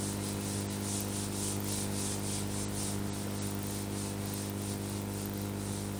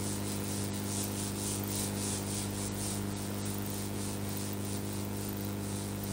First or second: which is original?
first